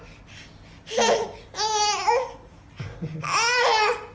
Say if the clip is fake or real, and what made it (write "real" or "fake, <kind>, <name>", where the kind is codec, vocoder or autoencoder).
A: real